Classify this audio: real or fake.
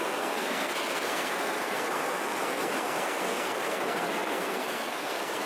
fake